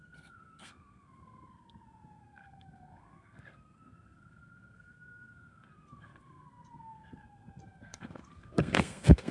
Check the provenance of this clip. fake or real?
fake